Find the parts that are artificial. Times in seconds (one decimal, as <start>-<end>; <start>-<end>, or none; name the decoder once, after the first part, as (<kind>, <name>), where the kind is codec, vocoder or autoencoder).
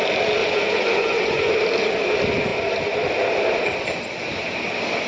0.4-1.5 (vocoder, Vocos)